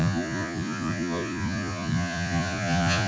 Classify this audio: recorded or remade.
remade